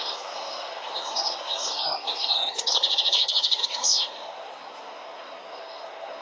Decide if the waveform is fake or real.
fake